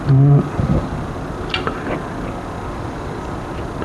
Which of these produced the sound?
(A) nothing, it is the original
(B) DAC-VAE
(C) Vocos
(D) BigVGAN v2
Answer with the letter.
A